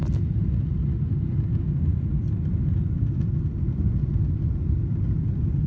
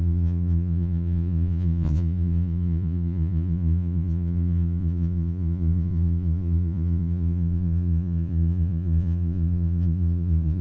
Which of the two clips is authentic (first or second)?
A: first